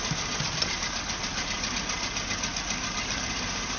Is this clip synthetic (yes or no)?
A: no